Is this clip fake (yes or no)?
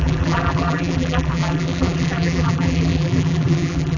yes